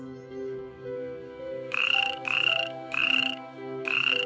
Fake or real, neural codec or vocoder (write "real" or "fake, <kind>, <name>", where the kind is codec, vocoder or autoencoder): fake, codec, DAC